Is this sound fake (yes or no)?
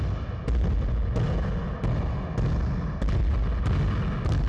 no